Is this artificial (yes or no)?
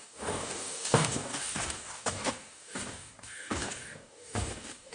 yes